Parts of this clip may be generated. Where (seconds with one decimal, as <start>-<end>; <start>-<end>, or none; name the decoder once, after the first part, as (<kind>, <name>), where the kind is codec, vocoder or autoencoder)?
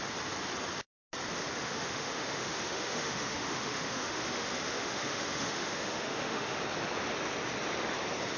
1.6-6.6 (autoencoder, DAC-VAE)